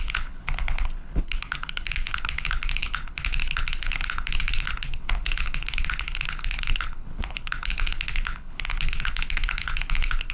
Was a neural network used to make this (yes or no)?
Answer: yes